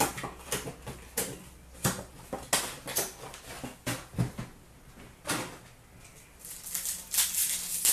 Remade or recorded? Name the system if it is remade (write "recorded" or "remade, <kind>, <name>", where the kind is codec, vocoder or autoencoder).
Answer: recorded